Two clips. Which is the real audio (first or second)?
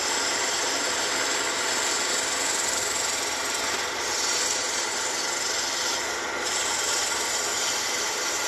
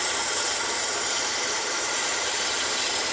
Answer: first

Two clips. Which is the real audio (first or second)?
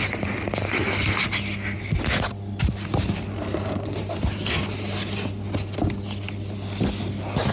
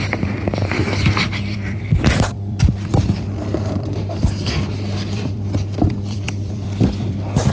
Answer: first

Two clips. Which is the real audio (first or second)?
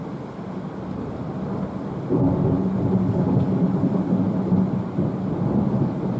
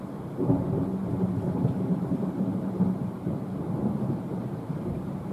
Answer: first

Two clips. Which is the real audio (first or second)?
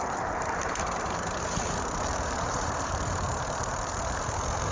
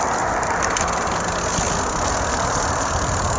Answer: second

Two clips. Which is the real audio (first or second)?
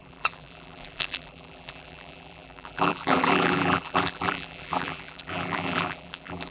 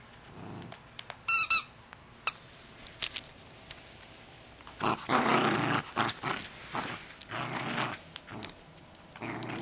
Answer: second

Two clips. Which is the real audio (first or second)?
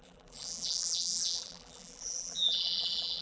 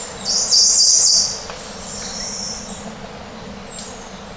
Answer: second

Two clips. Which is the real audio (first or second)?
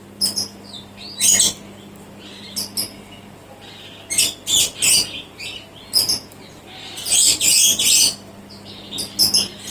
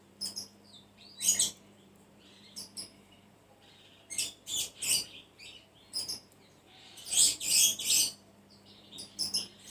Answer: first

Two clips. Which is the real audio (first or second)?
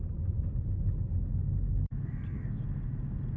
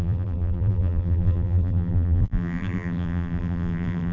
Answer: first